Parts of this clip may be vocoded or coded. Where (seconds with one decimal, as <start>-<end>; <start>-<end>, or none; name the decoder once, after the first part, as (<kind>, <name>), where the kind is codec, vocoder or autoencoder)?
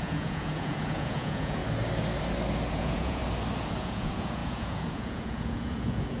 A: 0.0-1.6 (vocoder, Vocos); 2.7-3.2; 3.8-6.2